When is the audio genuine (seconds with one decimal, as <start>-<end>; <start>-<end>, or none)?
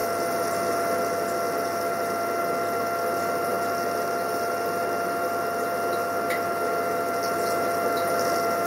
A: 0.0-8.7